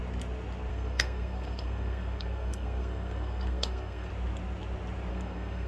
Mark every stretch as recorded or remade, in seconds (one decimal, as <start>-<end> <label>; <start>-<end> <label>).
0.0-0.7 recorded; 0.7-4.1 remade; 4.1-5.1 recorded; 5.1-5.7 remade